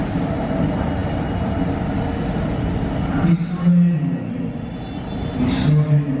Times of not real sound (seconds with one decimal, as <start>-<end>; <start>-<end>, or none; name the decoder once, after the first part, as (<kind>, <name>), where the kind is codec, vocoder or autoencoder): none